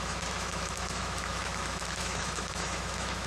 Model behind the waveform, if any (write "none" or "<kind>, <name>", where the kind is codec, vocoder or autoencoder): autoencoder, DAC-VAE